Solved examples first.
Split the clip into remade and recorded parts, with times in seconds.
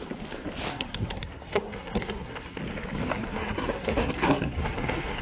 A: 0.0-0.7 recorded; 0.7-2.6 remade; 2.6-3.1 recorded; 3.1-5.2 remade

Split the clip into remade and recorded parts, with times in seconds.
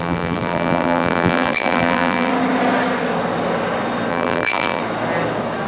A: 0.0-2.3 remade; 2.3-4.1 recorded; 4.1-4.8 remade; 4.8-5.7 recorded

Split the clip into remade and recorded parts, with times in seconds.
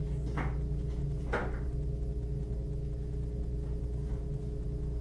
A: 0.0-5.0 recorded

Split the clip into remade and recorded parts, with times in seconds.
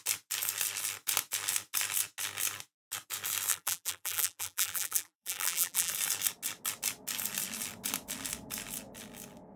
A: 0.0-3.5 recorded; 3.5-5.9 remade; 5.9-9.6 recorded